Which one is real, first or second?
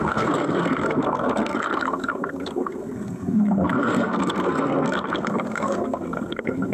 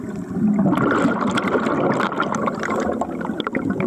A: second